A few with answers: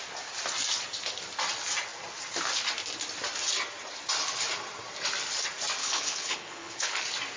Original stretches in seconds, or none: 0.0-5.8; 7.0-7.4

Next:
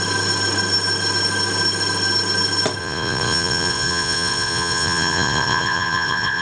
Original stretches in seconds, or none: 0.0-2.8

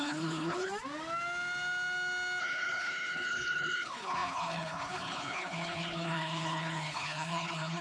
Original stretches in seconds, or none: 0.7-2.4